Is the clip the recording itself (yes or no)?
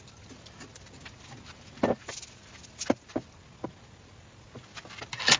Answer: yes